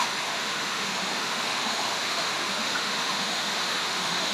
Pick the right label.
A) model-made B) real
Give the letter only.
A